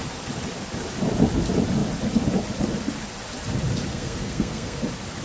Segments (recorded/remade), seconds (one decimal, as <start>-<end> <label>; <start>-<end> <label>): 0.0-3.9 recorded; 3.9-4.8 remade; 4.8-5.2 recorded